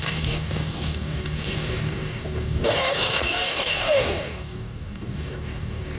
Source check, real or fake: fake